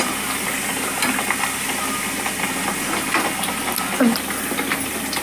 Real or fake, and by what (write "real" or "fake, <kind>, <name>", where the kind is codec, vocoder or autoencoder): real